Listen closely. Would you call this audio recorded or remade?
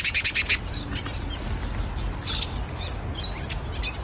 recorded